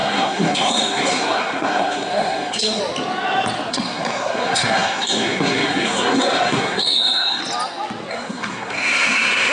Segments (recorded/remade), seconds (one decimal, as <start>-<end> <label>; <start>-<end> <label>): 0.0-2.8 remade; 2.8-3.7 recorded; 3.7-7.4 remade; 7.4-8.1 recorded; 8.1-9.5 remade